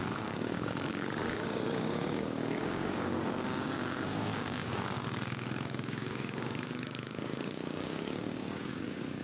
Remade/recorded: remade